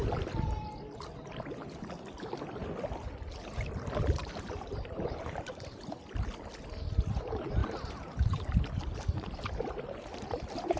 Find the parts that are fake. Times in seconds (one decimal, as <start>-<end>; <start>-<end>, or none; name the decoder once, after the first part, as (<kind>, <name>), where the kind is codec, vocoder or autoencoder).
4.2-6.0 (vocoder, BigVGAN v2); 7.6-9.3